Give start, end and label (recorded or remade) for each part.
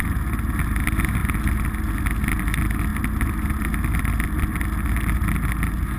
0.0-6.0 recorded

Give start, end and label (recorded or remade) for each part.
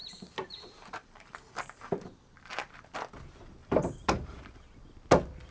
0.0-1.9 remade; 1.9-3.6 recorded; 3.6-4.4 remade; 4.4-5.5 recorded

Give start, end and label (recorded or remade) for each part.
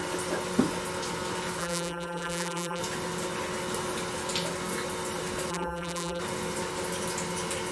0.0-1.6 recorded; 1.6-2.8 remade; 2.8-5.5 recorded; 5.5-6.2 remade; 6.2-7.7 recorded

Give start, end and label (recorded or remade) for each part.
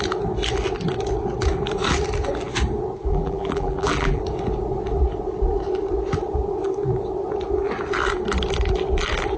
0.0-3.1 recorded; 3.1-4.2 remade; 4.2-9.4 recorded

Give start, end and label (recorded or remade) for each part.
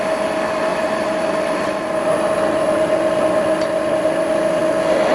0.0-0.7 recorded; 0.7-2.1 remade; 2.1-5.1 recorded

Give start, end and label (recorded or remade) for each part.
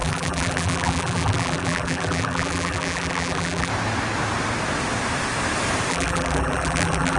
0.0-3.7 remade; 3.7-5.9 recorded; 5.9-7.2 remade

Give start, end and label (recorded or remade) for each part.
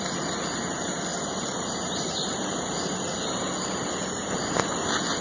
0.0-1.1 recorded; 1.1-3.3 remade; 3.3-5.2 recorded